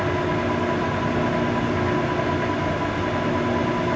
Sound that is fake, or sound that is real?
real